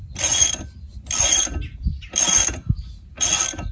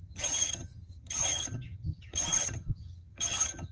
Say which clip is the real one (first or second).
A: first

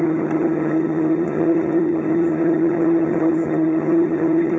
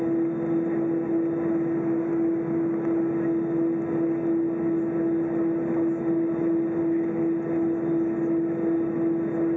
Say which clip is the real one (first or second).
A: second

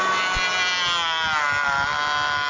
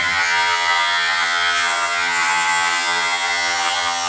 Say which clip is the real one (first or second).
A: first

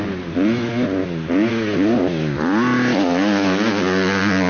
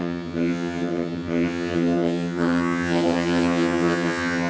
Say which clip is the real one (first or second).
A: first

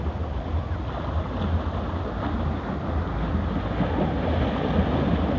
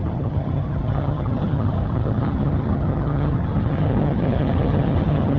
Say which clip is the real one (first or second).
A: first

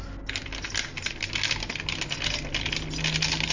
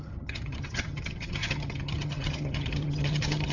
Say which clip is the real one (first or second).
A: first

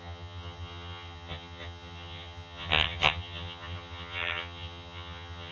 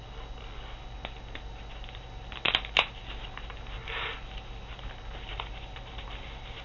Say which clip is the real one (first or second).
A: second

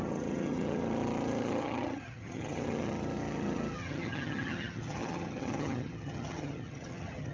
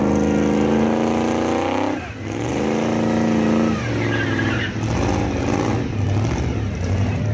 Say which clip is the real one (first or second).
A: second